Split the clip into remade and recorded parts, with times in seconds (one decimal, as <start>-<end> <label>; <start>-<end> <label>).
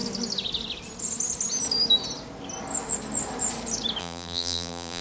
0.0-4.0 recorded; 4.0-5.0 remade